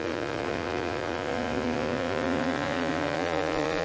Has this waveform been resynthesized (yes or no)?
yes